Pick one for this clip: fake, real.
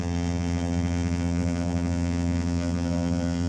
fake